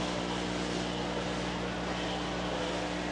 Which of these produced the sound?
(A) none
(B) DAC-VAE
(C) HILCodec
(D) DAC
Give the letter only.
A